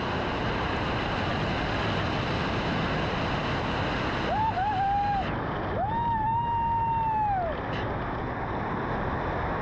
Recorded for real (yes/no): yes